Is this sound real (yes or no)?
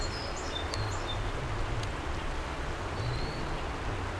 yes